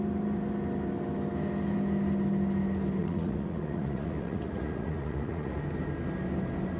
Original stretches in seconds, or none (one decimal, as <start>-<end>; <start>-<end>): 0.0-3.0; 5.6-6.8